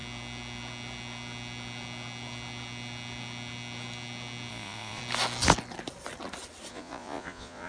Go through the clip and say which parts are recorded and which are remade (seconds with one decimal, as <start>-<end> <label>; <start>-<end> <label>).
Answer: 0.0-4.5 recorded; 4.5-5.0 remade; 5.0-6.7 recorded; 6.7-7.7 remade